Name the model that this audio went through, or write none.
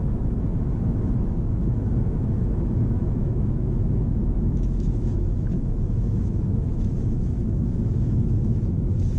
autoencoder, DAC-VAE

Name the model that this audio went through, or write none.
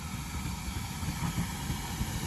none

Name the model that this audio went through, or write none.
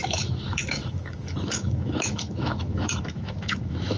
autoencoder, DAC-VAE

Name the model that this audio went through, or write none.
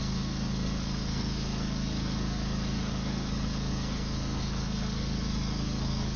codec, SNAC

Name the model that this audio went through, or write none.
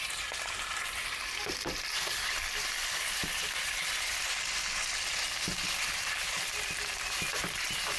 none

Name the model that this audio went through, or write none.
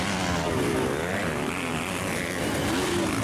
none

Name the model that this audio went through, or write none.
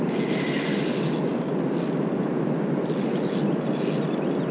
none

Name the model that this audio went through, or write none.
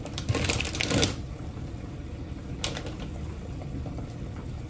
vocoder, BigVGAN v2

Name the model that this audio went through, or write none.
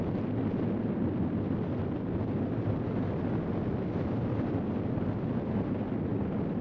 none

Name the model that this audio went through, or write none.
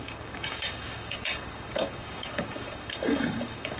codec, DAC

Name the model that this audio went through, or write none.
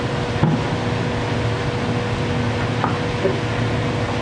none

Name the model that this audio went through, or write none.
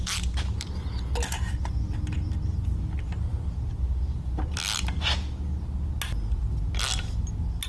none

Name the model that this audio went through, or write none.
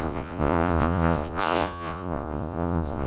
vocoder, Vocos